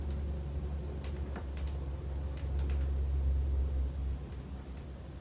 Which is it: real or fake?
real